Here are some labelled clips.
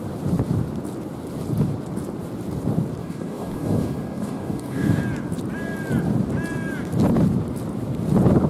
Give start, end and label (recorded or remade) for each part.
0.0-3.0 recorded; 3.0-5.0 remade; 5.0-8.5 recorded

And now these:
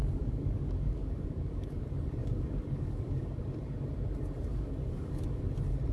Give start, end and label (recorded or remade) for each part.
0.0-1.8 remade; 1.8-2.2 recorded; 2.2-3.4 remade; 3.4-4.5 recorded; 4.5-5.4 remade; 5.4-5.9 recorded

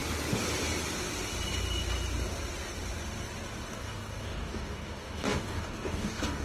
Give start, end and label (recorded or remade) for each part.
0.0-3.7 recorded; 3.7-6.4 remade